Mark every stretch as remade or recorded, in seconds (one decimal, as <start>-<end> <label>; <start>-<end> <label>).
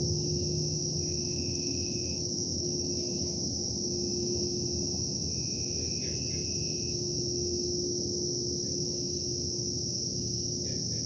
0.0-0.8 recorded; 0.8-2.9 remade; 2.9-11.1 recorded